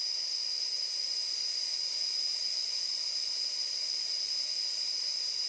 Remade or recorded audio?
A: remade